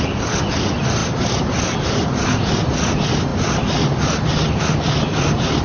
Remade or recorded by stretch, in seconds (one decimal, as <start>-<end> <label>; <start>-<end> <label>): 0.0-5.6 recorded